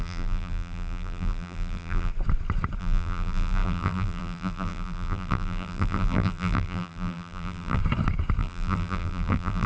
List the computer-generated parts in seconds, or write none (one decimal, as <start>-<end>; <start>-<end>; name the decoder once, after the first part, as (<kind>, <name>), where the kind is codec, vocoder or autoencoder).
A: 0.0-2.1 (vocoder, BigVGAN v2); 2.8-7.8; 8.4-9.7